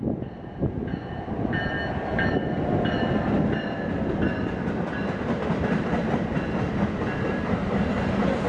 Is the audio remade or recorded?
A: recorded